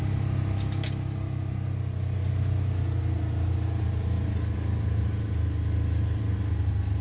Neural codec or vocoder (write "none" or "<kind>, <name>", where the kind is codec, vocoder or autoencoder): none